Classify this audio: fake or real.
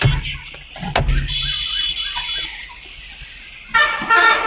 real